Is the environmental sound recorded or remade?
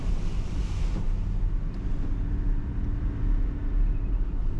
recorded